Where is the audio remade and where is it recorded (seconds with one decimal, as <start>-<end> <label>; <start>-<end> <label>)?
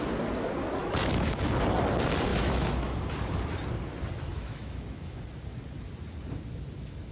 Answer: 0.0-0.8 recorded; 0.8-1.4 remade; 1.4-2.3 recorded; 2.3-3.0 remade; 3.0-4.3 recorded; 4.3-5.2 remade; 5.2-7.1 recorded